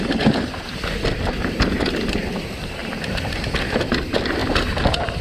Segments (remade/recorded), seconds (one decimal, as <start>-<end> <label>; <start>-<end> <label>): 0.0-2.8 recorded; 2.8-3.4 remade; 3.4-5.2 recorded